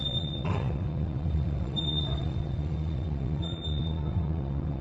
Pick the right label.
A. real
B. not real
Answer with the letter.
B